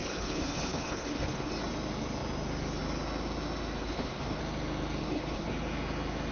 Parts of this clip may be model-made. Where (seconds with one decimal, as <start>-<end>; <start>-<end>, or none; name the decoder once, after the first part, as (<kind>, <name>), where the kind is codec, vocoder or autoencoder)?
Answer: 0.0-1.5 (codec, HILCodec); 3.8-4.4; 5.0-5.5